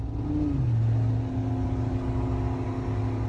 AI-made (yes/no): no